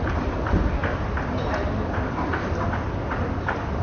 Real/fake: real